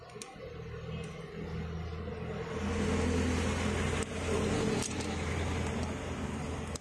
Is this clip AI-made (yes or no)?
no